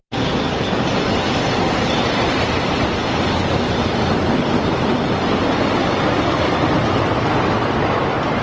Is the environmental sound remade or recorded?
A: recorded